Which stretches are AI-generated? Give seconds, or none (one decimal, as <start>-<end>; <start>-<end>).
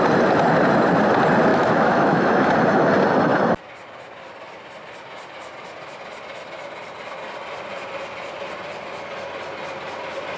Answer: 1.5-2.5